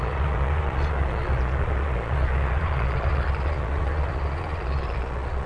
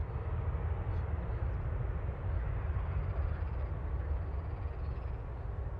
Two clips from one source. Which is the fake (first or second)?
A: first